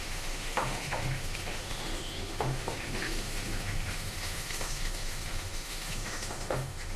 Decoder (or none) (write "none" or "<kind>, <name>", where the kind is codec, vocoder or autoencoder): autoencoder, DAC-VAE